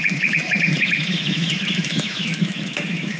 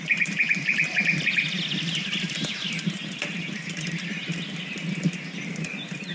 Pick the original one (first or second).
second